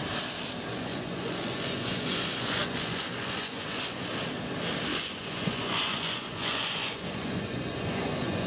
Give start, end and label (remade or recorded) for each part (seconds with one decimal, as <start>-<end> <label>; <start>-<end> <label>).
0.0-0.7 recorded; 0.7-4.1 remade; 4.1-4.9 recorded; 4.9-8.5 remade